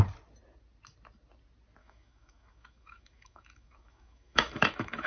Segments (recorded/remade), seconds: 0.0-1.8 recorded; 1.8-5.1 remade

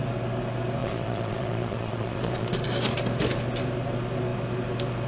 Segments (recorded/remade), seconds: 0.0-0.8 recorded; 0.8-2.5 remade; 2.5-5.1 recorded

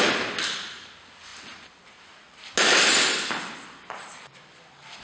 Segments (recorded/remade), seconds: 0.0-5.0 recorded

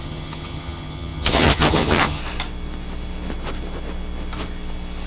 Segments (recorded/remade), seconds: 0.0-2.2 remade; 2.2-5.1 recorded

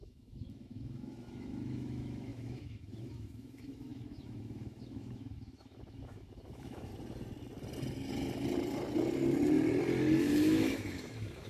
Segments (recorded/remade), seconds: 0.0-6.9 remade; 6.9-10.2 recorded; 10.2-11.5 remade